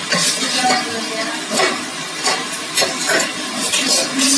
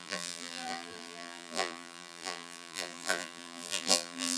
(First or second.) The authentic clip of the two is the first